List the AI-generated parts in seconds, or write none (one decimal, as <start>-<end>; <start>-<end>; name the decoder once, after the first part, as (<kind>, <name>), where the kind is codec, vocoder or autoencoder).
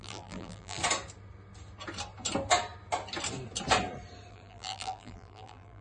0.0-0.8 (vocoder, BigVGAN v2); 4.3-5.8